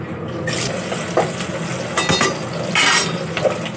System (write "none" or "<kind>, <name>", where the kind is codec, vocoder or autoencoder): none